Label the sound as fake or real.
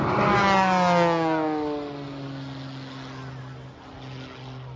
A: real